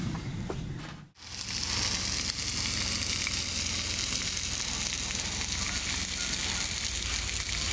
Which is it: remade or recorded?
recorded